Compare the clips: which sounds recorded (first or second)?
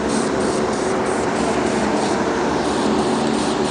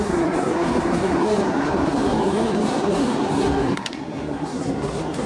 first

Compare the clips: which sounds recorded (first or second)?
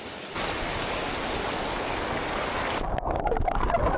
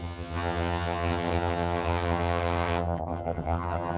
first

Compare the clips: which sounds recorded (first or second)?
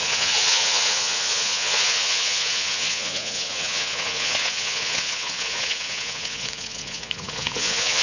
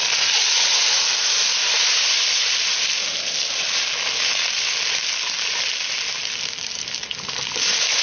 second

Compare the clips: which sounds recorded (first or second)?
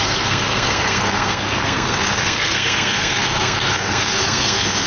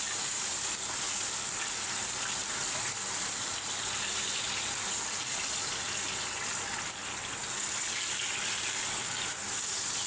second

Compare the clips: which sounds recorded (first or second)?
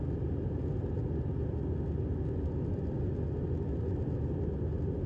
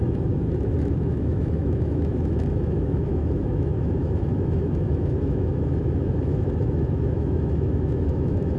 first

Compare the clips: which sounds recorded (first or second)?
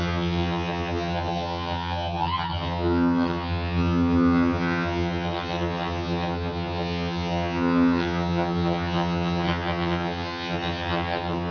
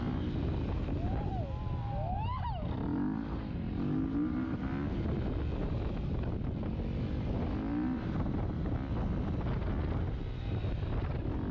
second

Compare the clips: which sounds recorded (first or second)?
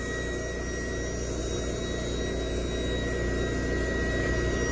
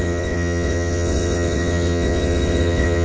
first